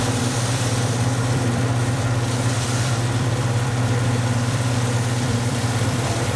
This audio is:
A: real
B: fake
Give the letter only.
B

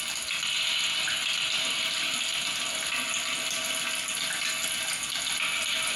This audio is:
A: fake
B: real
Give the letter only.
B